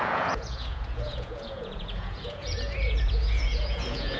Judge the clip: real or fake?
fake